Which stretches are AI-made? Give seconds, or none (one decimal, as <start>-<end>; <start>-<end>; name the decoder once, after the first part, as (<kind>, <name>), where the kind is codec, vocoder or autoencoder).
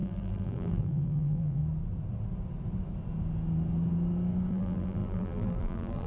0.0-1.6 (vocoder, BigVGAN v2); 4.5-6.1